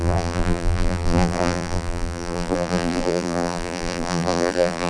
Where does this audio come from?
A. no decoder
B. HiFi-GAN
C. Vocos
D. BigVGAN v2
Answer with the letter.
D